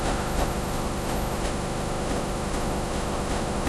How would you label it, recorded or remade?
remade